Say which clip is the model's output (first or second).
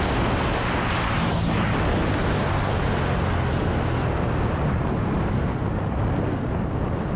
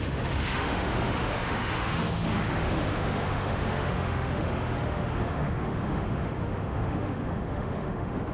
second